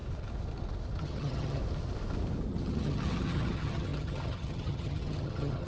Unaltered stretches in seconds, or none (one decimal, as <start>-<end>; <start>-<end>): 0.0-1.0; 1.6-2.5